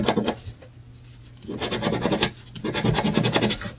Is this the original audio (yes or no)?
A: yes